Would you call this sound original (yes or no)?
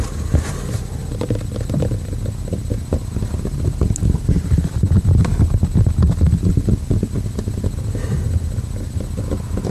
yes